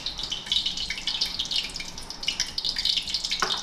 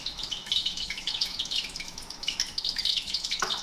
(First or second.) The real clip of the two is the first